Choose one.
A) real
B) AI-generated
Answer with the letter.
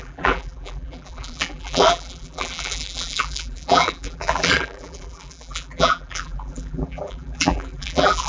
B